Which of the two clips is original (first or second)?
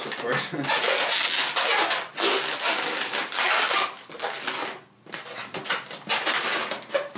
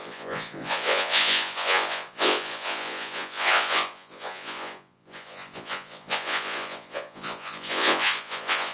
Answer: first